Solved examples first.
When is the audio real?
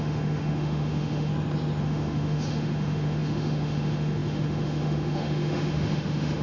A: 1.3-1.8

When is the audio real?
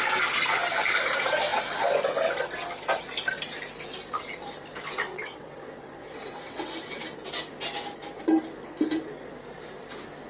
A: 0.0-5.1; 6.7-10.3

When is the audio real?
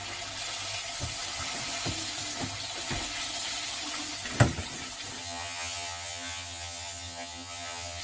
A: 0.0-5.2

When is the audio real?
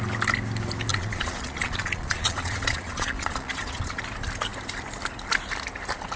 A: 0.0-0.9; 4.0-6.2